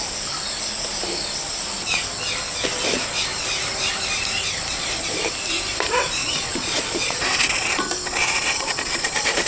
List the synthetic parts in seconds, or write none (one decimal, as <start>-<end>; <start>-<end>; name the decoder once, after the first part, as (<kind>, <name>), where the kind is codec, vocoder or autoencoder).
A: 6.2-7.8 (vocoder, Vocos); 8.2-9.5